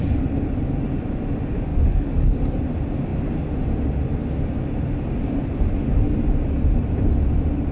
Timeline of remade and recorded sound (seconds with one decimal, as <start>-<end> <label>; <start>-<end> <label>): 0.0-1.7 recorded; 1.7-2.4 remade; 2.4-7.7 recorded